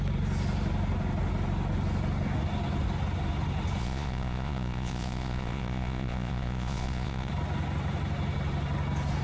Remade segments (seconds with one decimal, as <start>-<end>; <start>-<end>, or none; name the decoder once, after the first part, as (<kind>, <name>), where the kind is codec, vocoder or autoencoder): 3.8-7.3 (vocoder, Vocos)